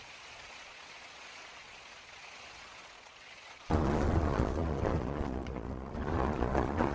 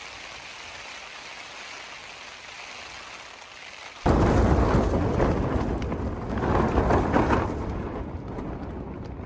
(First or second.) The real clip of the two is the second